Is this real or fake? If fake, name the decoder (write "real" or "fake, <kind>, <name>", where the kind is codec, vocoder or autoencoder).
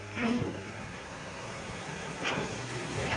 fake, codec, SNAC